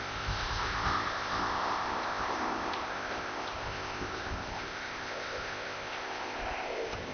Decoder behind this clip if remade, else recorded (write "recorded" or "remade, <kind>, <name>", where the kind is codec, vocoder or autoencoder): remade, codec, ZipCodec